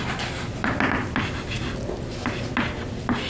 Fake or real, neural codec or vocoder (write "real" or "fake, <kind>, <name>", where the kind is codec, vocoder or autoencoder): real